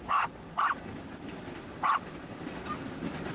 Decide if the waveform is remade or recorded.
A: recorded